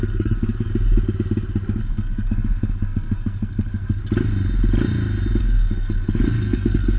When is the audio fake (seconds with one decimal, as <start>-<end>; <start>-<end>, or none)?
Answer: 0.0-0.7; 1.8-4.0; 5.4-7.0